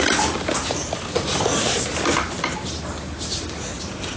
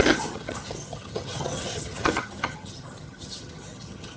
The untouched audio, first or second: first